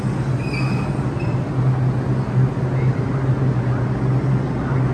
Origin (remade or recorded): recorded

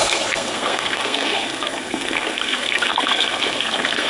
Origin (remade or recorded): remade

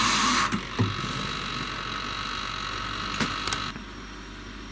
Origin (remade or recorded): recorded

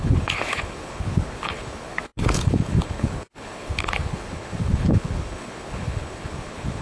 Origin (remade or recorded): remade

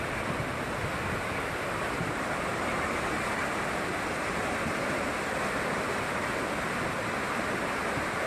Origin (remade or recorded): recorded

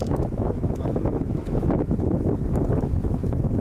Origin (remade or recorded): remade